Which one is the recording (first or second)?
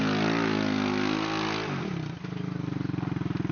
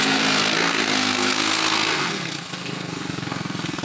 first